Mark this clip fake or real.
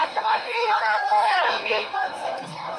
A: fake